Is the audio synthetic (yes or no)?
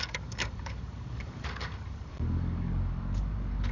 yes